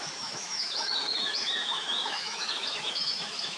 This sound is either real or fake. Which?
fake